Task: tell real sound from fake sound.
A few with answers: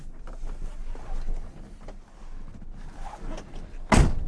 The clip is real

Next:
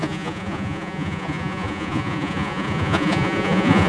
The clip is fake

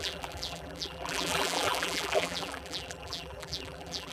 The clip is fake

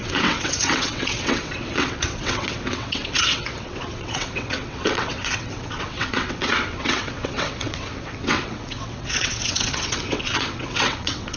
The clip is fake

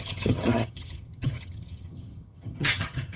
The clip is fake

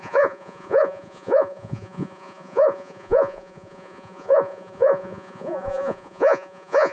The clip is fake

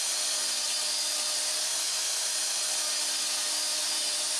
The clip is real